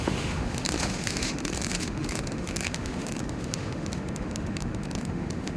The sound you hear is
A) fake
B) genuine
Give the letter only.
A